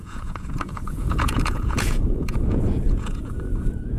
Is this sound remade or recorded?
remade